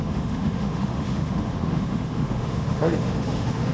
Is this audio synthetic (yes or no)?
yes